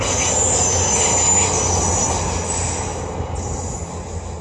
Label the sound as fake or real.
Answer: real